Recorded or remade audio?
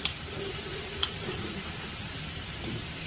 remade